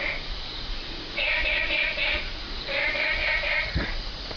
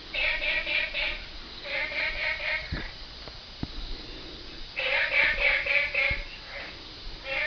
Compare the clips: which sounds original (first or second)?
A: second